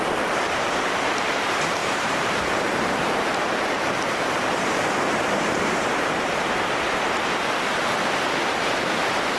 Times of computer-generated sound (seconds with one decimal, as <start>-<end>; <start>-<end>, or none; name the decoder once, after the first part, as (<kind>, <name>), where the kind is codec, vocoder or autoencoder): 0.0-9.4 (vocoder, BigVGAN v2)